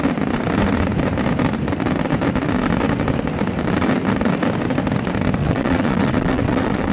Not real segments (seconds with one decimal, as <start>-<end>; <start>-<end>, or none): 5.4-6.9